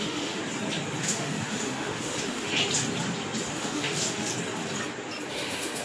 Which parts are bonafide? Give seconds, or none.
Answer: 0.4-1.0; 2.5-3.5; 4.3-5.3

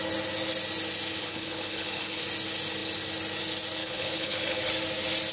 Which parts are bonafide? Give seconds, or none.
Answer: 0.0-1.2; 2.2-3.8; 4.7-5.3

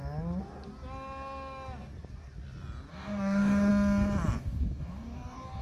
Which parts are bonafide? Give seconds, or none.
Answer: 0.0-2.9; 3.7-4.4

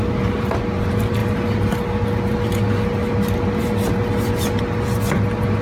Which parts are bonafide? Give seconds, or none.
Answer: 0.0-5.6